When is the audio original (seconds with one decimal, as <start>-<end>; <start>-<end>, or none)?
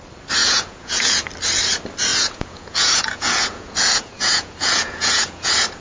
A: 0.0-0.4; 1.3-2.1